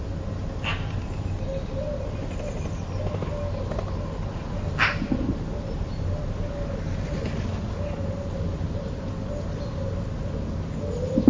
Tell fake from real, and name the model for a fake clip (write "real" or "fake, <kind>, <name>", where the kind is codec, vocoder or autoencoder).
real